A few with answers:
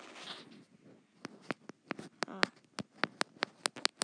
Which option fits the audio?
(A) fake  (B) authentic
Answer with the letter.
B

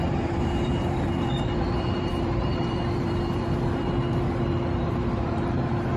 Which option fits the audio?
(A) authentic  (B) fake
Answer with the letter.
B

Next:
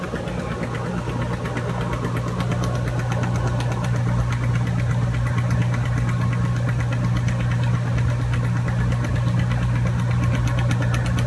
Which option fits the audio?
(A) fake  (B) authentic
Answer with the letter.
B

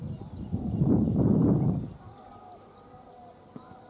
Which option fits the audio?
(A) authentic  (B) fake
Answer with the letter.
A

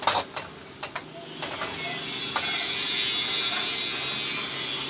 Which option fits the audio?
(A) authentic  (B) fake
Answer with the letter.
A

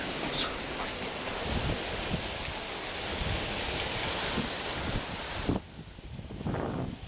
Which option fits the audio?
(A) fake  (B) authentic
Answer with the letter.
B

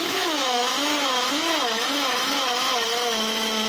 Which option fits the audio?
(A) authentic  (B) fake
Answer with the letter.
B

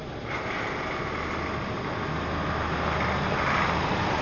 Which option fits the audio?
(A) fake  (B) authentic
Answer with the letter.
B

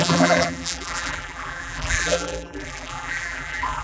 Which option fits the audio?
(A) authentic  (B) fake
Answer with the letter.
B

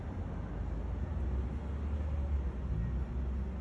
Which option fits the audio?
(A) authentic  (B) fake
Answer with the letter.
A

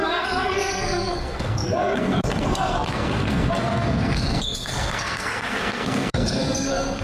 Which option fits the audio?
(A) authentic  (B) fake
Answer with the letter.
B